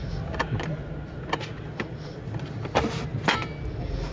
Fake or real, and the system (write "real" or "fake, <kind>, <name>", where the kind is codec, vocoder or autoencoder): real